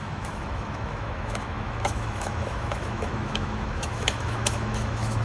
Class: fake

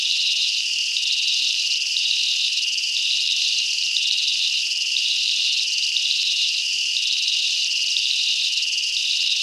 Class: fake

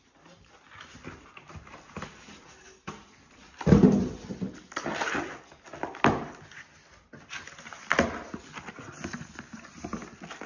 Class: real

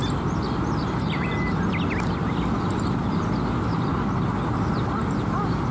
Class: real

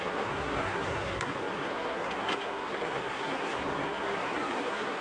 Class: fake